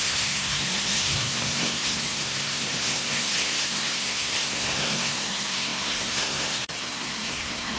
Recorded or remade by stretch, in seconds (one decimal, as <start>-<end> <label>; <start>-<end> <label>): 0.0-7.8 remade